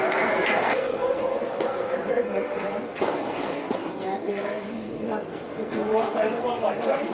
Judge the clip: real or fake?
fake